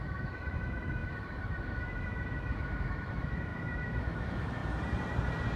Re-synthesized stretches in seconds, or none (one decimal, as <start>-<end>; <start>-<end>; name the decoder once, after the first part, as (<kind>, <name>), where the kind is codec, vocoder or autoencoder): 0.0-4.6 (autoencoder, DAC-VAE)